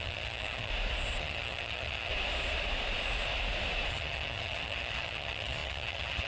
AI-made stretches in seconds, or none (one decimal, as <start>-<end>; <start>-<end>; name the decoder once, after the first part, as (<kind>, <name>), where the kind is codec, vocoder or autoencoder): 0.0-0.7 (vocoder, HiFi-GAN); 1.2-2.1; 3.9-6.3